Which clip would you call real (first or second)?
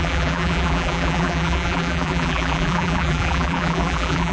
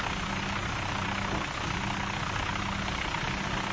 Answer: second